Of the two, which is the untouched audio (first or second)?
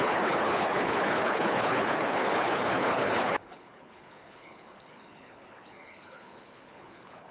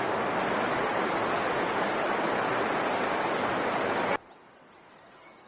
second